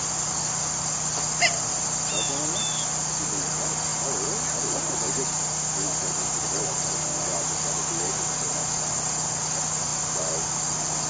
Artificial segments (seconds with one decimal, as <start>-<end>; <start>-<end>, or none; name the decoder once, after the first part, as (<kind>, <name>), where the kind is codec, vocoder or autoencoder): none